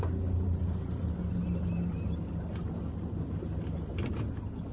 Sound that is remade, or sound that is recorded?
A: recorded